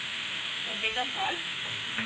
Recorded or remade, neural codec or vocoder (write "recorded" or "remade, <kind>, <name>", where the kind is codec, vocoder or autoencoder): remade, autoencoder, DAC-VAE